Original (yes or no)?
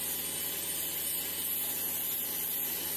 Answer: yes